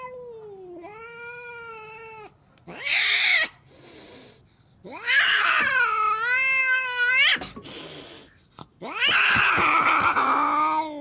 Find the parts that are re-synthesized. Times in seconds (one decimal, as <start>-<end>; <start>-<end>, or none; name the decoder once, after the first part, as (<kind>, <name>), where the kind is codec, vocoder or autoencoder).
1.0-1.7 (autoencoder, DAC-VAE); 6.6-7.1